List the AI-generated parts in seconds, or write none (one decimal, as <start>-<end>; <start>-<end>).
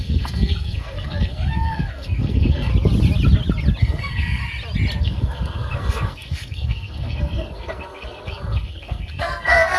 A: 0.0-2.7; 3.8-4.4; 5.0-9.8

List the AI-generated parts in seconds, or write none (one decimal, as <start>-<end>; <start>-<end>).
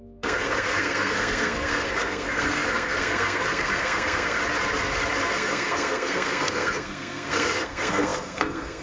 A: 0.0-4.4; 5.3-8.8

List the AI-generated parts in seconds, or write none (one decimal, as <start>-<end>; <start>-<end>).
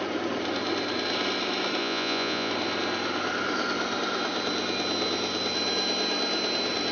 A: 1.8-2.5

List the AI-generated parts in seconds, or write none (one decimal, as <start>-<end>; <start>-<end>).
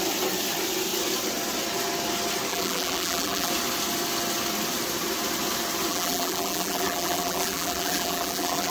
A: 2.5-3.5; 5.9-8.7